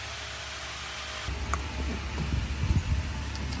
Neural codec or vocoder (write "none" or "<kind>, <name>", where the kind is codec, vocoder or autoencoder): none